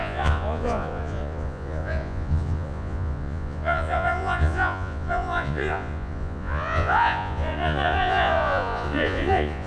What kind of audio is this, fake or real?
fake